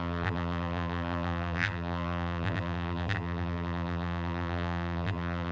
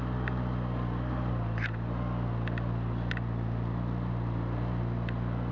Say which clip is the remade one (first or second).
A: first